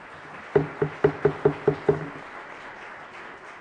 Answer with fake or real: real